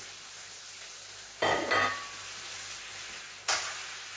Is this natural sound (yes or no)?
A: yes